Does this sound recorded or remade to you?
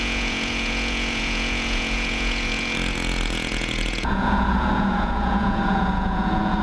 remade